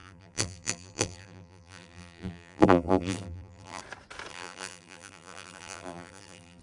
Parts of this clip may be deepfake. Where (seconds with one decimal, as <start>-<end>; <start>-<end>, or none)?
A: 0.0-3.8; 4.3-6.6